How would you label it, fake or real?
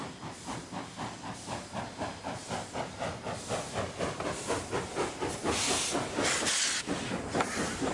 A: real